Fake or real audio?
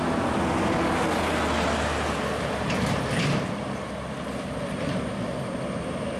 real